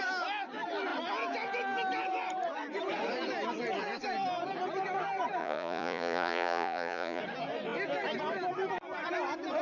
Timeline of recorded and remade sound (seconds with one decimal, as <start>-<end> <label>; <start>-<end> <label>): 0.0-5.4 recorded; 5.4-7.2 remade; 7.2-9.6 recorded